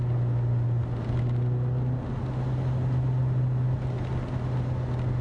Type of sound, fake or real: real